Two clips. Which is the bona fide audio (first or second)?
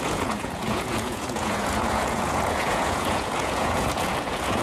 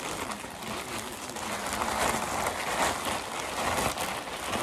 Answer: second